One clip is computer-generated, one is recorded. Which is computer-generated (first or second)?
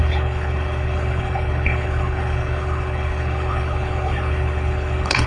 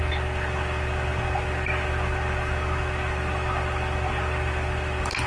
first